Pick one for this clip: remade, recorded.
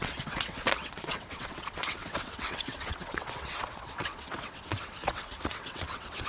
remade